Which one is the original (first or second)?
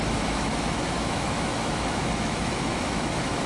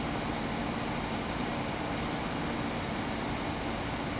second